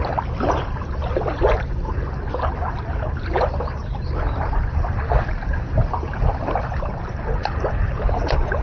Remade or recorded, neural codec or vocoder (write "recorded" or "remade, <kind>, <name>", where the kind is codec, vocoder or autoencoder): recorded